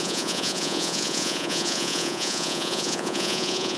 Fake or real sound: fake